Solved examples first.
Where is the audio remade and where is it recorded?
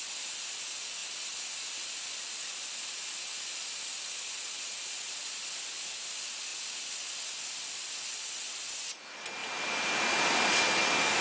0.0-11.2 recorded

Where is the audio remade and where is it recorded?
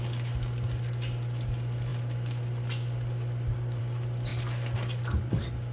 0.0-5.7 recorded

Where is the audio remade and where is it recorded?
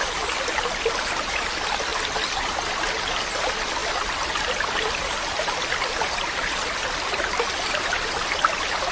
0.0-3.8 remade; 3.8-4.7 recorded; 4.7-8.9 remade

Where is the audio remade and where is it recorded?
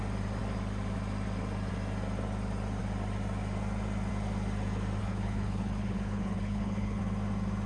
0.0-5.0 recorded; 5.0-7.0 remade; 7.0-7.7 recorded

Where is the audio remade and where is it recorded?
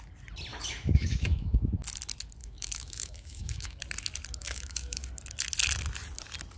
0.0-0.5 recorded; 0.5-1.7 remade; 1.7-2.4 recorded; 2.4-3.8 remade; 3.8-4.4 recorded; 4.4-5.0 remade; 5.0-6.6 recorded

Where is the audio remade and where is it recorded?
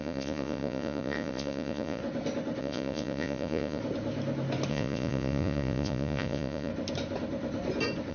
0.0-2.0 remade; 2.0-2.6 recorded; 2.6-3.8 remade; 3.8-4.7 recorded; 4.7-6.7 remade; 6.7-8.1 recorded